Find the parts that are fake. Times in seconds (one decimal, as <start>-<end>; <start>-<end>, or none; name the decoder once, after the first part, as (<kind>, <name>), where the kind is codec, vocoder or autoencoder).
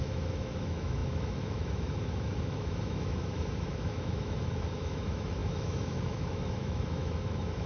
0.0-7.7 (autoencoder, DAC-VAE)